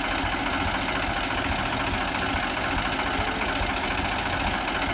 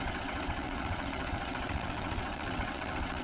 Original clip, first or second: first